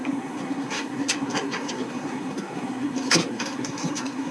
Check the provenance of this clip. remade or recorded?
remade